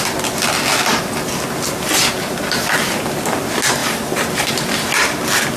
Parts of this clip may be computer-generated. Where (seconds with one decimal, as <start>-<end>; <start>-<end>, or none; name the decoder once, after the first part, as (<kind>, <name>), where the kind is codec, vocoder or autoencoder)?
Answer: 3.8-4.5 (vocoder, BigVGAN v2)